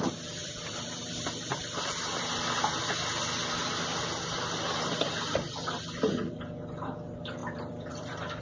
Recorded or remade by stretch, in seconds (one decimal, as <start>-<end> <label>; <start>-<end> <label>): 0.0-0.4 recorded; 0.4-2.8 remade; 2.8-3.6 recorded; 3.6-5.1 remade; 5.1-7.4 recorded; 7.4-8.4 remade